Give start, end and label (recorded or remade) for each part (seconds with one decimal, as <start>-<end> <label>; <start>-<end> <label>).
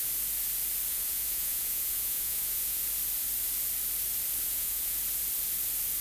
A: 0.0-0.9 recorded; 0.9-2.8 remade; 2.8-4.5 recorded; 4.5-5.0 remade; 5.0-6.0 recorded